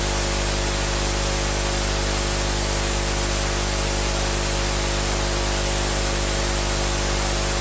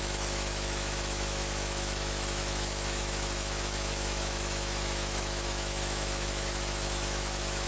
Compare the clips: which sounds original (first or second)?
first